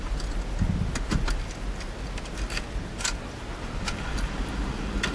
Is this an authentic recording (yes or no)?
yes